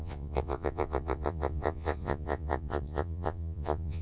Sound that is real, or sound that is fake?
fake